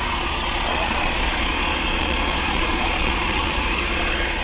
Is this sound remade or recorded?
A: remade